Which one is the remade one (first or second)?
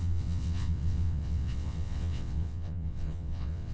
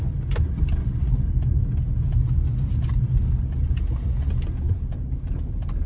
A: first